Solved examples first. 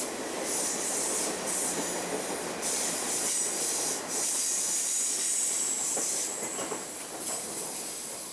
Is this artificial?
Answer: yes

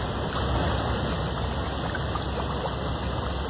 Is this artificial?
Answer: no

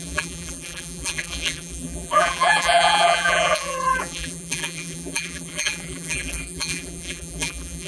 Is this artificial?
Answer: yes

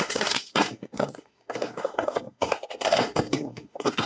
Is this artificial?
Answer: yes